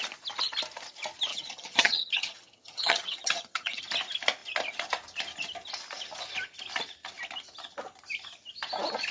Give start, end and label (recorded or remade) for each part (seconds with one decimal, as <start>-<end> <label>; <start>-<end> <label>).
0.0-1.3 recorded; 1.3-3.8 remade; 3.8-9.1 recorded